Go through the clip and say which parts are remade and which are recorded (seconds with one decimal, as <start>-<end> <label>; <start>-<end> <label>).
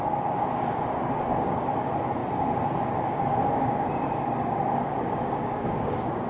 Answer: 0.0-6.3 remade